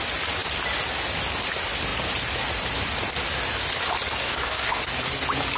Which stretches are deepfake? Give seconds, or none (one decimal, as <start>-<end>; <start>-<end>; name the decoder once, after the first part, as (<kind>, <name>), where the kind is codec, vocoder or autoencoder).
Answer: 4.2-4.8 (codec, DAC)